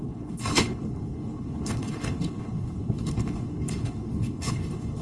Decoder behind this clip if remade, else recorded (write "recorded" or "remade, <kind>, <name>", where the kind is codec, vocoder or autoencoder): remade, codec, HILCodec